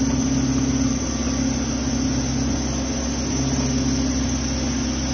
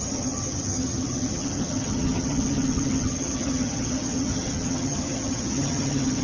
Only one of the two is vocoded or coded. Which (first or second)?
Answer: second